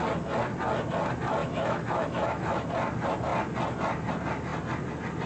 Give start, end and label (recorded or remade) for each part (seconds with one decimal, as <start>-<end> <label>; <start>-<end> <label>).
0.0-1.4 recorded; 1.4-2.7 remade; 2.7-5.3 recorded